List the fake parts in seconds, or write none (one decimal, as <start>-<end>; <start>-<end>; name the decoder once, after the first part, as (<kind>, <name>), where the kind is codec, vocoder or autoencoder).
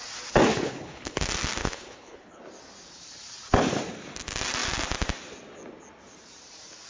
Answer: 0.5-1.2 (codec, HILCodec); 1.6-2.4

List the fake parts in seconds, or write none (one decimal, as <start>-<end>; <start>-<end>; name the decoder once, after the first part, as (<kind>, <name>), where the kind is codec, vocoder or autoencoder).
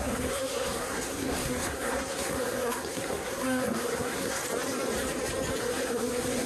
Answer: 0.0-4.4 (codec, SNAC); 5.6-6.5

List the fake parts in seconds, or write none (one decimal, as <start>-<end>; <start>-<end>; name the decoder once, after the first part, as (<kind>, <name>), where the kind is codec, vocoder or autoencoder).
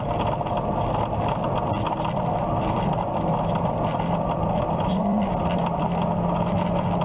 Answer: 2.4-5.9 (vocoder, BigVGAN v2)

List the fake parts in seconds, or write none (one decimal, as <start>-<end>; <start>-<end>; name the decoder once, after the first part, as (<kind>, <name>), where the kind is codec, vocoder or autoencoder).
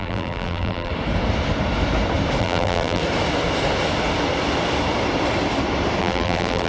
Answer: 0.0-0.9 (vocoder, BigVGAN v2); 2.4-3.0; 6.0-6.7